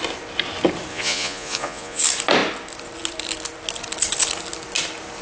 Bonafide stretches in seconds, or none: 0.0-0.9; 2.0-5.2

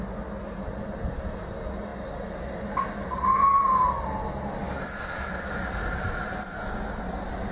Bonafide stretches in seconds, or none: 0.0-7.5

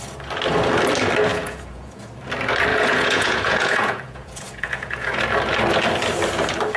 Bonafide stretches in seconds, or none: 0.0-1.3; 2.0-2.7; 5.2-6.8

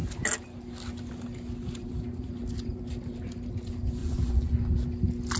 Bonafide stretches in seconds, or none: 0.0-4.0; 4.6-5.4

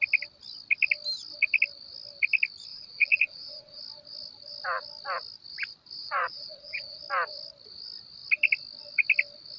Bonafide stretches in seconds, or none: 0.0-2.7; 3.8-6.0; 7.0-9.6

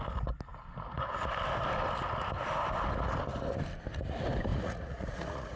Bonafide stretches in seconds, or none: 0.0-4.5

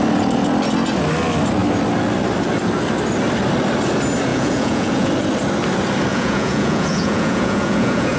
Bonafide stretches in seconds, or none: 0.0-4.3; 5.1-6.1

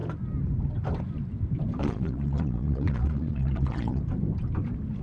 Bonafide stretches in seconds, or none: 0.0-1.8; 4.0-5.0